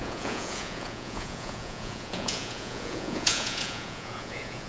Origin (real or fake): fake